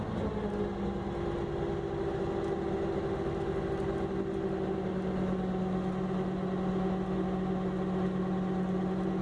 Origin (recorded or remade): recorded